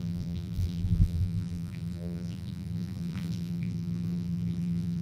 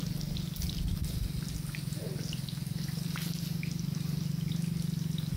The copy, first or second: first